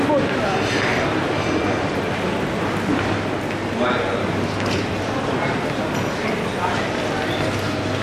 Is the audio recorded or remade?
recorded